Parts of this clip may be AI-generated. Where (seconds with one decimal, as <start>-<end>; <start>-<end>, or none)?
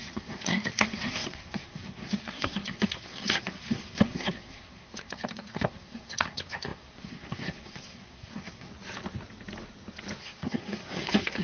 0.0-8.7; 10.2-11.4